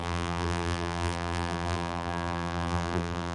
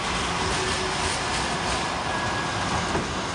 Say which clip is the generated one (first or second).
first